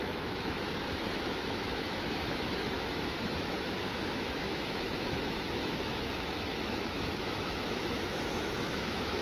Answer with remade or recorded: remade